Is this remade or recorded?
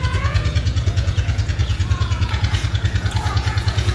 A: remade